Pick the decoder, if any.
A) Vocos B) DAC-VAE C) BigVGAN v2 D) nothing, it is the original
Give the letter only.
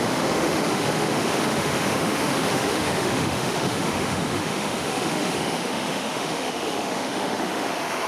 B